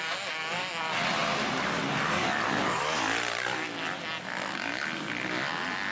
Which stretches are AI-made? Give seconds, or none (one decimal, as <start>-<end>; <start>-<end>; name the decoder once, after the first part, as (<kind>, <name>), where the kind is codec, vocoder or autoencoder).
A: none